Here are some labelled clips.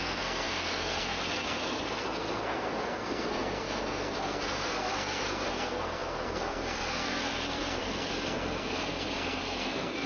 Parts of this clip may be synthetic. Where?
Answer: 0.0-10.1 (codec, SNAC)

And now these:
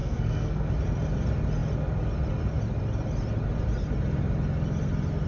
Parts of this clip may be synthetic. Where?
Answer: 0.0-0.7 (codec, SNAC)

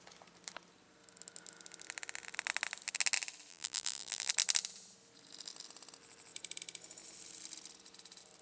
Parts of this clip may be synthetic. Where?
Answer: 3.5-4.3 (vocoder, BigVGAN v2)

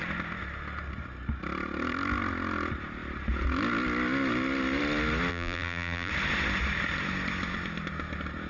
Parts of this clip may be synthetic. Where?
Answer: 5.3-6.1 (vocoder, BigVGAN v2)

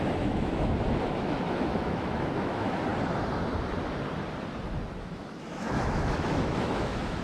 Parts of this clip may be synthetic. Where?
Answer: 0.0-2.9 (autoencoder, DAC-VAE); 5.0-7.2